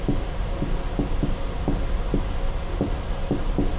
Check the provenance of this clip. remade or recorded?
recorded